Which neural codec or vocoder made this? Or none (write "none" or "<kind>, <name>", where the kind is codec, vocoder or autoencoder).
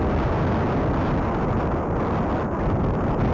none